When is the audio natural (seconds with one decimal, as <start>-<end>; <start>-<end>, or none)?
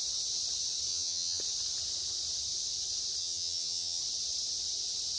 0.0-0.9; 1.4-3.2; 4.0-5.2